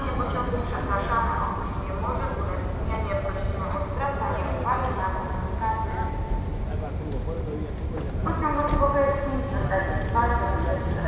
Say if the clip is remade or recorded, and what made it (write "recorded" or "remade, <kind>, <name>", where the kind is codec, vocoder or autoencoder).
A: recorded